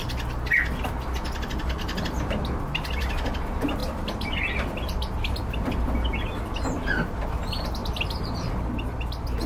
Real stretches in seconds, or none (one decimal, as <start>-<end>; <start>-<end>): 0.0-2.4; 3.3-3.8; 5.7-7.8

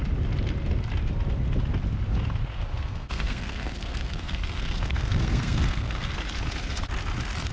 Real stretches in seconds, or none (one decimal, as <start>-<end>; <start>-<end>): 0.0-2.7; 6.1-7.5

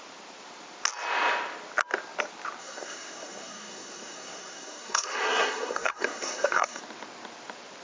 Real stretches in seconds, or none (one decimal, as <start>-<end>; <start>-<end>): 0.0-2.6; 6.8-7.8

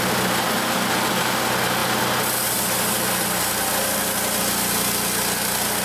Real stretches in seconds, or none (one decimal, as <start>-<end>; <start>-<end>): 0.0-5.8